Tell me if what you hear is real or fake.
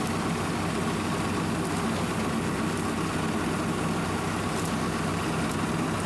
real